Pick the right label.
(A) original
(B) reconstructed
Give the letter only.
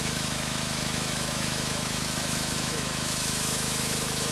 B